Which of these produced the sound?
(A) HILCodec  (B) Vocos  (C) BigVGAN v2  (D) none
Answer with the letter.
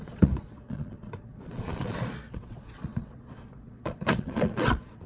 B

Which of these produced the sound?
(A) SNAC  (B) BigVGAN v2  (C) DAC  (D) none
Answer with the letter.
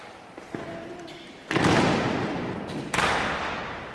D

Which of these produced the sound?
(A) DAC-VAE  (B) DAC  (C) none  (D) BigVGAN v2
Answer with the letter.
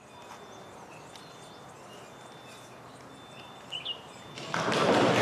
C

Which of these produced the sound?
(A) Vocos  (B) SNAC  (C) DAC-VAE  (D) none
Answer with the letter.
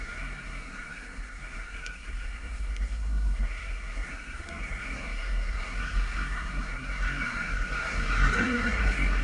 B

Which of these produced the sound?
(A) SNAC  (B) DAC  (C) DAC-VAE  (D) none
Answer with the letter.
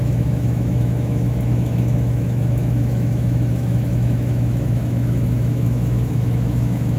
C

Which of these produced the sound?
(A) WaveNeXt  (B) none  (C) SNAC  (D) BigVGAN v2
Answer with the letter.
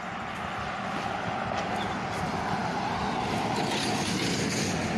B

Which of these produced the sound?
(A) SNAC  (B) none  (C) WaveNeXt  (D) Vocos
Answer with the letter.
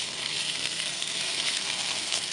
A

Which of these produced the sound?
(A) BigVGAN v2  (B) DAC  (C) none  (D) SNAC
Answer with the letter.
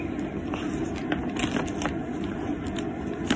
C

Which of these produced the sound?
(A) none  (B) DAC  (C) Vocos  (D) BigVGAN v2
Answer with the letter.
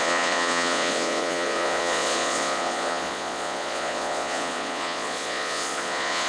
C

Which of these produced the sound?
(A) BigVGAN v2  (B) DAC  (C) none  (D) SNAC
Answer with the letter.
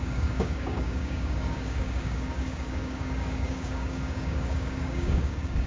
B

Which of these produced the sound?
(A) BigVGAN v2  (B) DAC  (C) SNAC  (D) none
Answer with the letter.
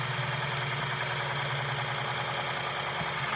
D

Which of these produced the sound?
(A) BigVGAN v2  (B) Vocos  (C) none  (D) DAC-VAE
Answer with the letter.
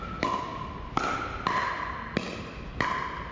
C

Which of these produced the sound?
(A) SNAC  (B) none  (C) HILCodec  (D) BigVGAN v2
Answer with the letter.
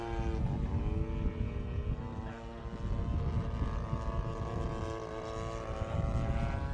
B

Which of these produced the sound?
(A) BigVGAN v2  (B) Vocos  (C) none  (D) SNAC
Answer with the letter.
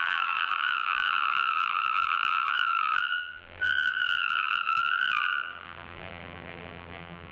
A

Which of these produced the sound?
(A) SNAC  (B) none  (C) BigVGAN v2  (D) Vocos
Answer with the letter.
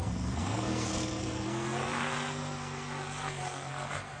A